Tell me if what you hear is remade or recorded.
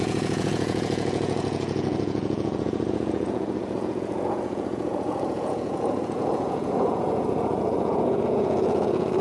remade